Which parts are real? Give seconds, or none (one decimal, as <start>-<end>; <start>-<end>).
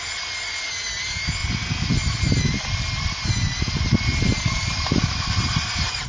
0.0-6.1